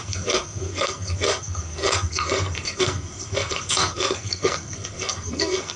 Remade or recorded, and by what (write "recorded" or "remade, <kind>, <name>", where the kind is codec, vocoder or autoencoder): remade, codec, SNAC